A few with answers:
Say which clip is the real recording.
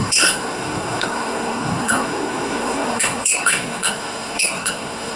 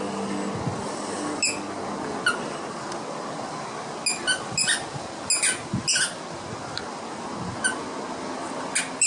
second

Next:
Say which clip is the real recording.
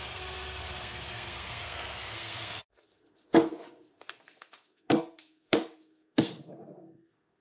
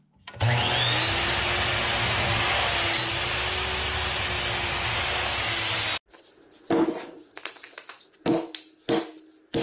second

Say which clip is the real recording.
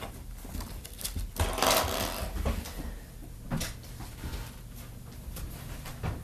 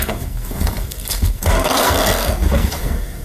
first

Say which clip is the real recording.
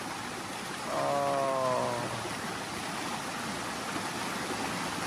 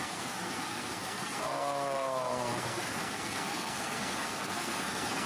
first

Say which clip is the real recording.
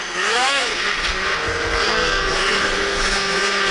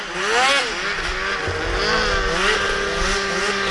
second